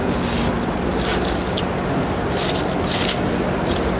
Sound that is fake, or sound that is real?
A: real